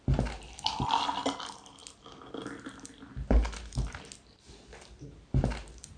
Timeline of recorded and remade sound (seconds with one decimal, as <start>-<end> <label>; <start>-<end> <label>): 0.0-6.0 recorded